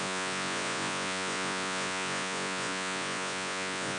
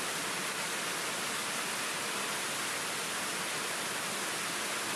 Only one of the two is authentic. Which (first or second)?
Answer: second